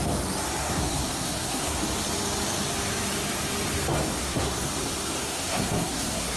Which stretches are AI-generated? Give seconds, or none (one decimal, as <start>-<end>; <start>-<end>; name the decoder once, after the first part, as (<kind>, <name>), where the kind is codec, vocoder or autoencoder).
0.6-1.8 (codec, SNAC); 4.2-4.7; 5.2-6.4